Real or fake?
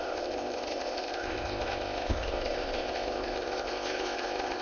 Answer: fake